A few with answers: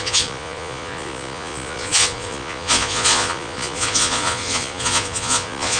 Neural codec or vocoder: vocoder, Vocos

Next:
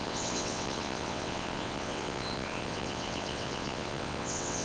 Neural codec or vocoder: vocoder, WaveNeXt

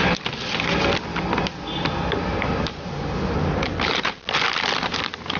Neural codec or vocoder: none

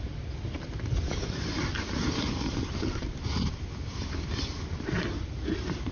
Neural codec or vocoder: none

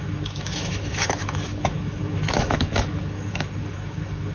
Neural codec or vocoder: autoencoder, DAC-VAE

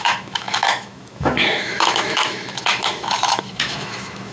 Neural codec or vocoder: autoencoder, DAC-VAE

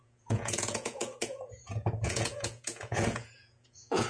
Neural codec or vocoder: vocoder, Vocos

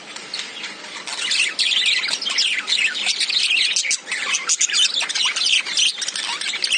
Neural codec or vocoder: none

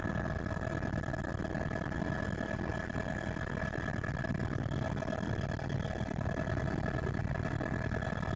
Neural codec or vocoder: none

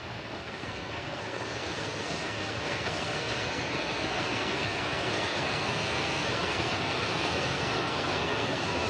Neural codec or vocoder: codec, SNAC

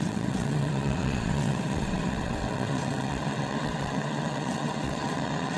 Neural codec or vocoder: vocoder, WaveNeXt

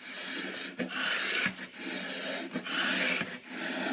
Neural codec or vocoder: none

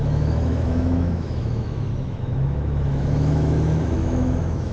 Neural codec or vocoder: autoencoder, DAC-VAE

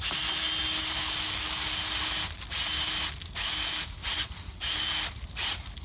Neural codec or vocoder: none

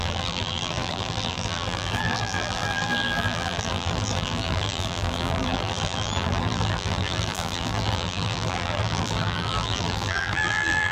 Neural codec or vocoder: vocoder, BigVGAN v2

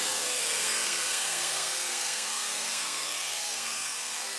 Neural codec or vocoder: codec, SNAC